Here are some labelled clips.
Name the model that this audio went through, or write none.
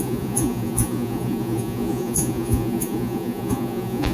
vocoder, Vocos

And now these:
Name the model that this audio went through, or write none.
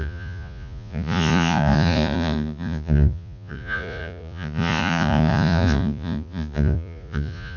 vocoder, Vocos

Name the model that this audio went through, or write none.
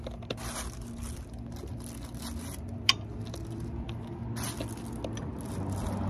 none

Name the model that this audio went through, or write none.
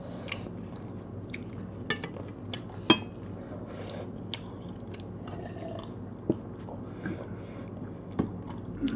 none